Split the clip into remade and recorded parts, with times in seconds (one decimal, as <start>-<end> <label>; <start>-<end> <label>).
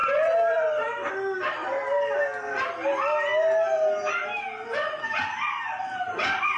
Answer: 0.0-1.1 remade; 1.1-1.6 recorded; 1.6-2.2 remade; 2.2-6.6 recorded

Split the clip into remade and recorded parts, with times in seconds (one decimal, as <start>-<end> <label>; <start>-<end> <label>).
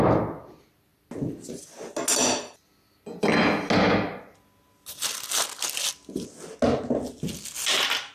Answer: 0.0-8.1 recorded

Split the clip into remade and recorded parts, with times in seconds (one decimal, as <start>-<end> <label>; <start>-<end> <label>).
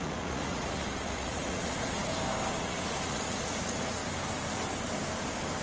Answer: 0.0-2.1 remade; 2.1-2.6 recorded; 2.6-4.0 remade; 4.0-5.6 recorded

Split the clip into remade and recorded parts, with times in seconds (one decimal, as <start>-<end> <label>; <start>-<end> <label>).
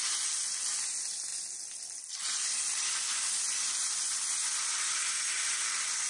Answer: 0.0-6.1 recorded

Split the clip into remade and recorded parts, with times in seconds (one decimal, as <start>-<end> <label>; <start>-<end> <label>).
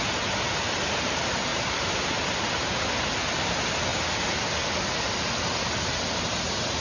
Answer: 0.0-1.5 recorded; 1.5-2.5 remade; 2.5-6.8 recorded